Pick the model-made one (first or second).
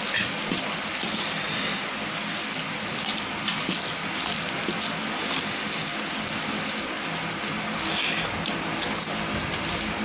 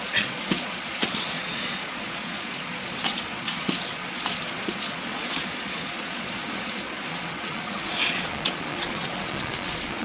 second